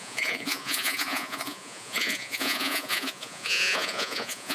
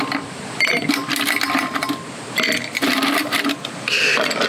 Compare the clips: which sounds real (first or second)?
second